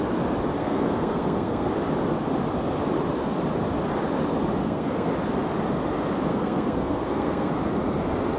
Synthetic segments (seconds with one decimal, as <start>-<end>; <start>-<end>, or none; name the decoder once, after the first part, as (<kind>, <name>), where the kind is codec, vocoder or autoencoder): 0.5-1.7 (codec, SNAC); 4.6-5.1; 6.3-7.5